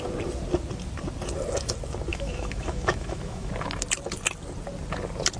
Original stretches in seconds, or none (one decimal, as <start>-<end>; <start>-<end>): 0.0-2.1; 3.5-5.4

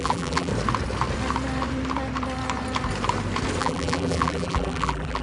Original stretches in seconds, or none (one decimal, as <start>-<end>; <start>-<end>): 0.5-3.6

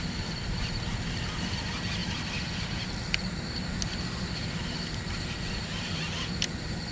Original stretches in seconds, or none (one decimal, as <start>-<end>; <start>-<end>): 0.0-6.9